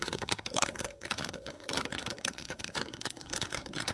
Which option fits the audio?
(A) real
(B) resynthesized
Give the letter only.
B